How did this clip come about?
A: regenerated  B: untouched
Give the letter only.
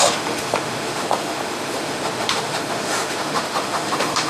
A